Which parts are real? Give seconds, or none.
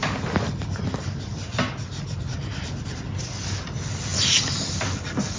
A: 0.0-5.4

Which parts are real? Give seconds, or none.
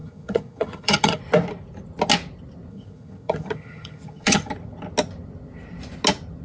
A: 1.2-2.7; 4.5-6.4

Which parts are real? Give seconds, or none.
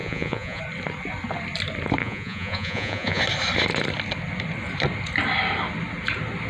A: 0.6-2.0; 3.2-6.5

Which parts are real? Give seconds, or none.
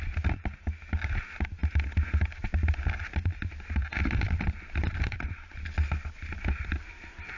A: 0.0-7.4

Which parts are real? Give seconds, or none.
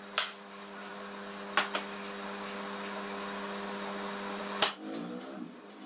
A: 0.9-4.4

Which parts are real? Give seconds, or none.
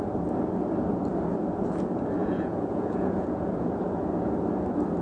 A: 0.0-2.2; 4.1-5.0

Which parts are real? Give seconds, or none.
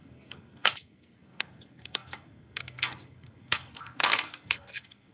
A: none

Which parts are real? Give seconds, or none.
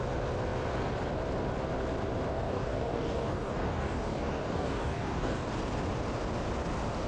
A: 0.0-2.3; 5.5-7.1